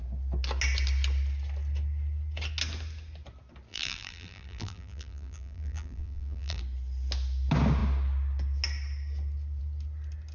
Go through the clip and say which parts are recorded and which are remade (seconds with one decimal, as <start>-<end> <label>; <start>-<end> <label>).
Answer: 0.0-3.7 recorded; 3.7-6.6 remade; 6.6-10.3 recorded